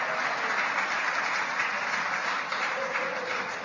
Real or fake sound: real